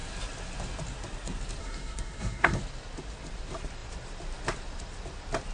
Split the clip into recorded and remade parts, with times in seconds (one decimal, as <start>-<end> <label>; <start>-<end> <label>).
0.0-1.6 recorded; 1.6-2.6 remade; 2.6-5.5 recorded